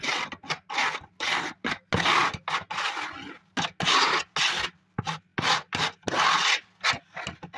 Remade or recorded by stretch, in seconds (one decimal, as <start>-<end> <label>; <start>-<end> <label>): 0.0-7.6 recorded